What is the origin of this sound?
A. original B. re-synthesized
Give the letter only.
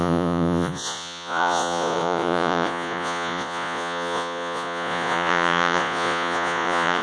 B